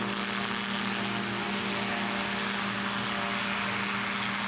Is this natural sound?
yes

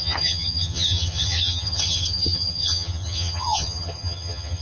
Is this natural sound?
no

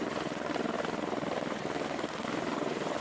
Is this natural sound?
yes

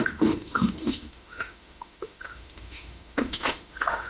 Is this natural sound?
no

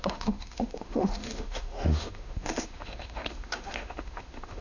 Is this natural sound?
no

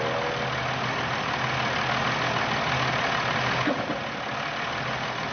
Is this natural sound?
yes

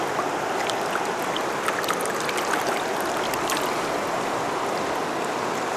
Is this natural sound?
yes